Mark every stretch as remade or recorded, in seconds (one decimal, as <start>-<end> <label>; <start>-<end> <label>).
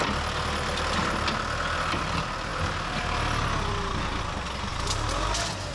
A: 0.0-5.7 recorded